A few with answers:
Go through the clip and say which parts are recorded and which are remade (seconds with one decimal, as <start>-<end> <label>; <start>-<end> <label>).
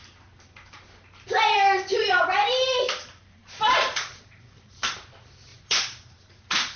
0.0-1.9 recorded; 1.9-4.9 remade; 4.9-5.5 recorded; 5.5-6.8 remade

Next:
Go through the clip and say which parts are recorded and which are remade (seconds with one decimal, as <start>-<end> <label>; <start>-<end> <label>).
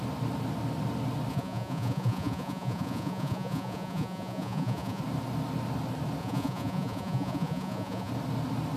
0.0-1.3 recorded; 1.3-5.0 remade; 5.0-6.2 recorded; 6.2-8.1 remade; 8.1-8.8 recorded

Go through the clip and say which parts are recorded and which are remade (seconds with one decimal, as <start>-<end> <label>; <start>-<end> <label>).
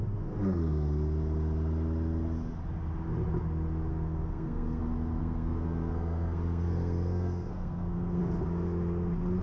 0.0-3.9 recorded; 3.9-4.8 remade; 4.8-5.2 recorded; 5.2-8.2 remade; 8.2-9.4 recorded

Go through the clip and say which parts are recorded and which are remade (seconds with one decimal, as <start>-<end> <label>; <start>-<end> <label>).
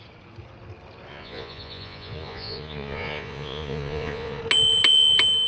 0.0-1.1 recorded; 1.1-4.4 remade; 4.4-5.5 recorded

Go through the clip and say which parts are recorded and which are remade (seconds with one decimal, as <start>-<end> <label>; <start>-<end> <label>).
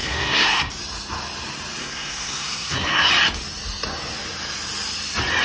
0.0-0.7 remade; 0.7-1.8 recorded; 1.8-3.1 remade; 3.1-5.4 recorded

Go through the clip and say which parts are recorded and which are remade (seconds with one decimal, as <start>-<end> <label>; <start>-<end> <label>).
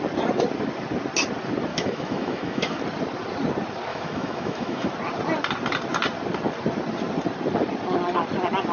0.0-1.7 recorded; 1.7-2.8 remade; 2.8-3.9 recorded; 3.9-4.9 remade; 4.9-8.7 recorded